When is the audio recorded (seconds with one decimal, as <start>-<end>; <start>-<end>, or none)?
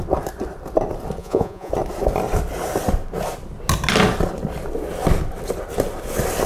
0.0-1.2; 1.7-6.5